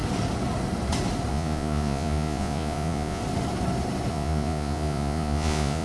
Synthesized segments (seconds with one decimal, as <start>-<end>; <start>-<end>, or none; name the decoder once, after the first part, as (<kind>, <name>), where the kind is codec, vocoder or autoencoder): 1.3-3.2 (vocoder, Vocos); 4.1-5.8